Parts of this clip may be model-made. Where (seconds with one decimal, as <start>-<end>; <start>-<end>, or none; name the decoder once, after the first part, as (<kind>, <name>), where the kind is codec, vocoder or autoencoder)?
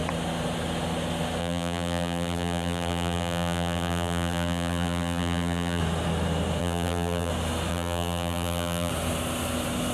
1.4-5.8 (vocoder, BigVGAN v2); 6.6-7.3; 7.7-8.9